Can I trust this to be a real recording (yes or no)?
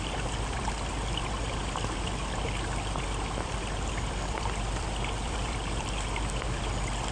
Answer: no